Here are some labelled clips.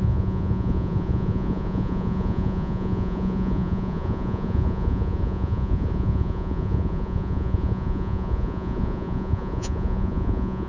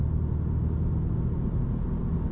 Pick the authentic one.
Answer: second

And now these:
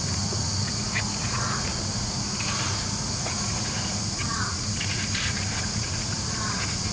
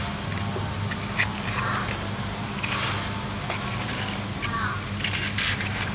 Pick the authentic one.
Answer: second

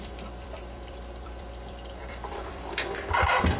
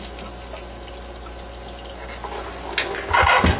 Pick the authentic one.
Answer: second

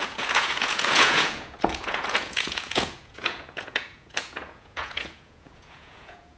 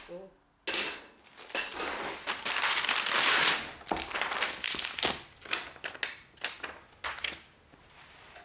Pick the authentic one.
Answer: second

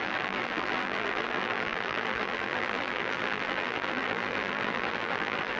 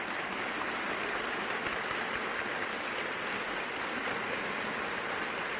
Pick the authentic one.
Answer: second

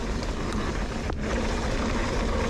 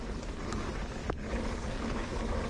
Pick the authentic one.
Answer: first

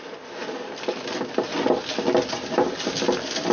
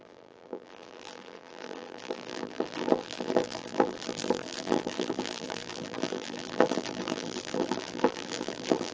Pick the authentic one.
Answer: first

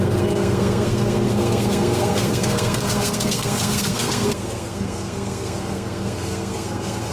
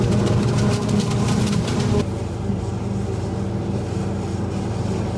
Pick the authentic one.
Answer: second